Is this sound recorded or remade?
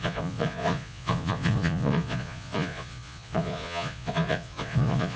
remade